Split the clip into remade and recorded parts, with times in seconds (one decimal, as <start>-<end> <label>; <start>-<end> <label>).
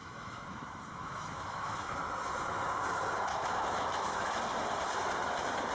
0.0-1.9 remade; 1.9-3.3 recorded; 3.3-4.3 remade; 4.3-5.7 recorded